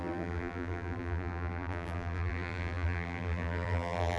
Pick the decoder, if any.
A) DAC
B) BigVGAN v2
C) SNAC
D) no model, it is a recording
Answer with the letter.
B